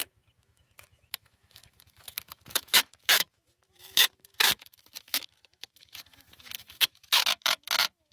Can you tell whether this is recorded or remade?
remade